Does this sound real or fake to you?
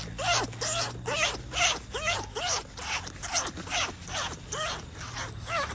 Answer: real